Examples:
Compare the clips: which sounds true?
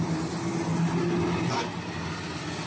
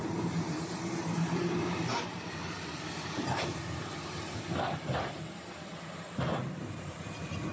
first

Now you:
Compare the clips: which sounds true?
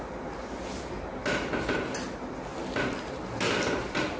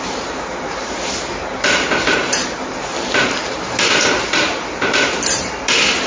first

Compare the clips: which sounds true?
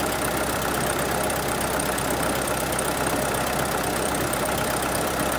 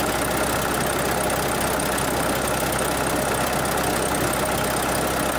second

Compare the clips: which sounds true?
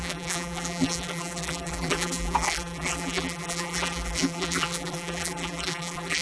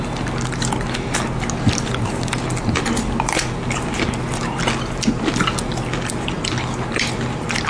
second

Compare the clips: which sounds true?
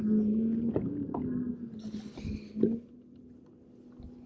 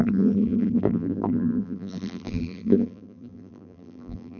first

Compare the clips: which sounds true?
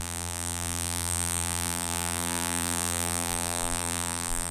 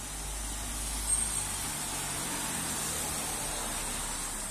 second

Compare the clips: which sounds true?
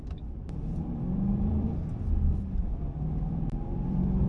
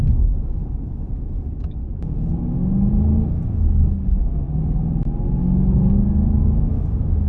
second